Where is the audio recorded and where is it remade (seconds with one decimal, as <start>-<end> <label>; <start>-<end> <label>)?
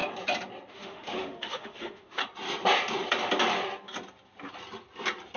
0.0-0.7 recorded; 0.7-2.2 remade; 2.2-5.4 recorded